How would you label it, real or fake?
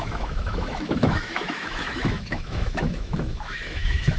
fake